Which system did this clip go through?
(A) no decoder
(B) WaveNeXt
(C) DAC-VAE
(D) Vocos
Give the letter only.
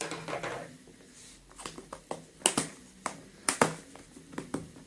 A